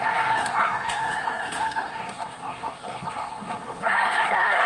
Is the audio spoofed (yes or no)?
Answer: yes